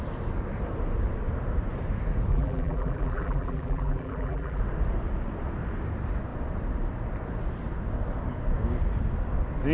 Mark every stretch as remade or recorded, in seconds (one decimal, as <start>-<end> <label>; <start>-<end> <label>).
0.0-2.3 recorded; 2.3-4.6 remade; 4.6-9.7 recorded